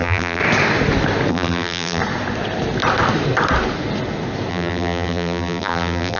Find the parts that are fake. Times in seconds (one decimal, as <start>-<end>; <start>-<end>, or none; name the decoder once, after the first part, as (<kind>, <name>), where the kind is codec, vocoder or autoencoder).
0.0-0.4 (vocoder, BigVGAN v2); 1.3-2.0; 4.5-6.2